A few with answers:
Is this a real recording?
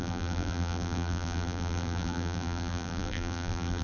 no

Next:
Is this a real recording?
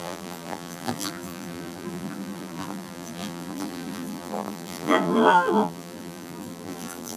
no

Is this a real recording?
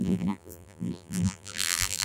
no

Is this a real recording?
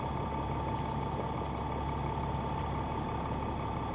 yes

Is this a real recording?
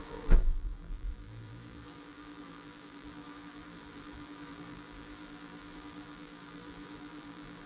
no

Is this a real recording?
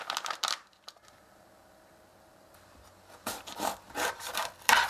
yes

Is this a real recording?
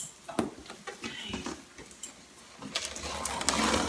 yes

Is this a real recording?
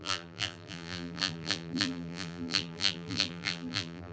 no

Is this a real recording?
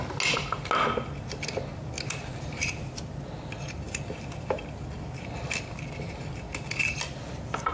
yes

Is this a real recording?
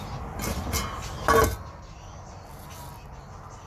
yes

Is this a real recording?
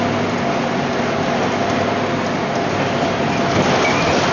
yes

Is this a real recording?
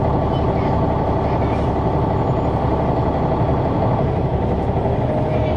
yes